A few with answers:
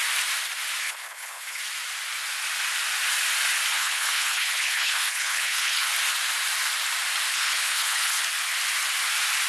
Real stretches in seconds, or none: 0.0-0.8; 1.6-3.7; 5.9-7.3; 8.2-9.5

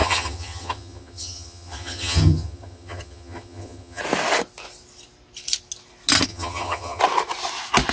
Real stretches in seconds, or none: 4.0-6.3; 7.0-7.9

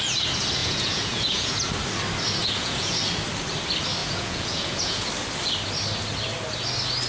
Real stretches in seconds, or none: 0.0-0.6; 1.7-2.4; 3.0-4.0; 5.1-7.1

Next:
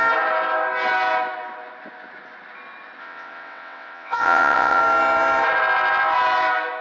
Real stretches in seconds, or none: 0.0-3.0; 4.8-6.8

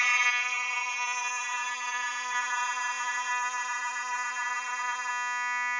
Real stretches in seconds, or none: 5.1-5.8

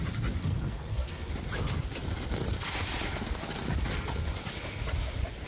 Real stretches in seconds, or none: 0.0-0.4; 1.3-5.5